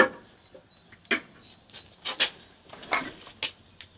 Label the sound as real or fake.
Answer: real